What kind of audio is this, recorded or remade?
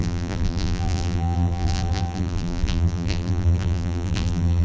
remade